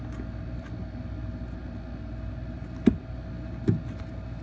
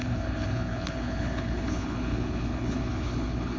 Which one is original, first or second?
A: first